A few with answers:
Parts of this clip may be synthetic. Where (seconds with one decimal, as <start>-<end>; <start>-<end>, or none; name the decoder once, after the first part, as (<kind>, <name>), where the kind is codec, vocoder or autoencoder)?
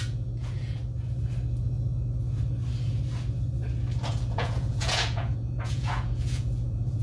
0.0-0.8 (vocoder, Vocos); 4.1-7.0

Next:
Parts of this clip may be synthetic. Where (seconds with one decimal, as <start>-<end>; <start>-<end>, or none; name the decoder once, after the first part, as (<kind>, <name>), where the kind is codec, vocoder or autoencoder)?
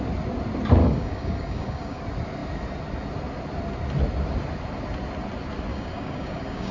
0.8-2.0 (codec, DAC); 5.7-6.7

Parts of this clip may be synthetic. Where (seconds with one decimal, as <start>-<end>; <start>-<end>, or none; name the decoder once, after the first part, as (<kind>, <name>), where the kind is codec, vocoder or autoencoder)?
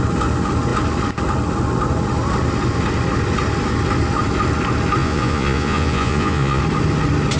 5.0-6.6 (vocoder, Vocos)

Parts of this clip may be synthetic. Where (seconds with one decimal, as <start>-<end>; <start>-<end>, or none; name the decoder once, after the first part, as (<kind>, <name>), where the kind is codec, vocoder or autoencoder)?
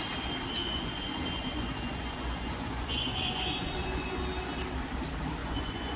0.6-4.2 (vocoder, Vocos); 5.4-6.0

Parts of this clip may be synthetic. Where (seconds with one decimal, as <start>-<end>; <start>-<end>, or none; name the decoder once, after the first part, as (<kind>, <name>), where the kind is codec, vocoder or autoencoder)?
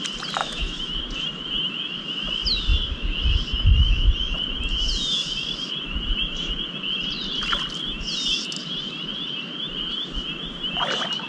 0.4-1.0 (autoencoder, DAC-VAE)